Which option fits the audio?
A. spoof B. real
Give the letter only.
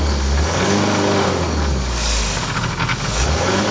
A